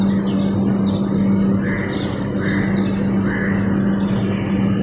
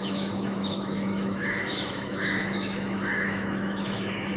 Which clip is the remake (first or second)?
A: second